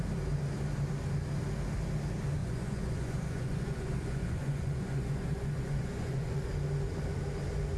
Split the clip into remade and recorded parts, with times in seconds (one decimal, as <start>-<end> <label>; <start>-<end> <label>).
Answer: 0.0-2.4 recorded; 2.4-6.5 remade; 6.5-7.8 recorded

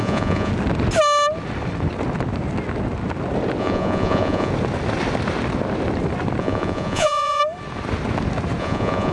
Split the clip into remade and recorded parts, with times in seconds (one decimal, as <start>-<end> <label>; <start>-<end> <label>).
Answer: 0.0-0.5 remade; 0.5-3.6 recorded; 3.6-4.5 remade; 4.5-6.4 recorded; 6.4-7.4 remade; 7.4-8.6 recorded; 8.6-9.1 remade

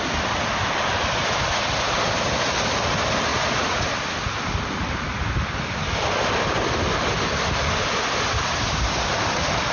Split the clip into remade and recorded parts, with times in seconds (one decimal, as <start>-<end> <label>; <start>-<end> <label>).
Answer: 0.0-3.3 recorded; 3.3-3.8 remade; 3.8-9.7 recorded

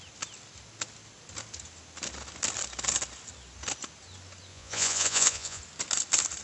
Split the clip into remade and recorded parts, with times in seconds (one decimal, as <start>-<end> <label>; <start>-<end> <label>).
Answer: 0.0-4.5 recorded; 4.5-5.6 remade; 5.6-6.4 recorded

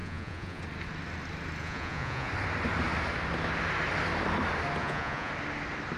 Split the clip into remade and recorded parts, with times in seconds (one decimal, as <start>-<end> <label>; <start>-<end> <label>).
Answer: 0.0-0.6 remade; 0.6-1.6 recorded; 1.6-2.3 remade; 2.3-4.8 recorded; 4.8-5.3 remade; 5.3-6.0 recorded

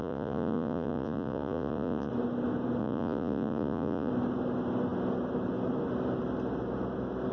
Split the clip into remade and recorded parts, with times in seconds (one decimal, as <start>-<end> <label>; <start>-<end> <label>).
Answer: 0.0-2.1 remade; 2.1-2.8 recorded; 2.8-4.1 remade; 4.1-7.3 recorded